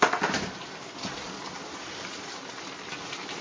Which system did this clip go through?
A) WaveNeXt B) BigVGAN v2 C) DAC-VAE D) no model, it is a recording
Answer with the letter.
D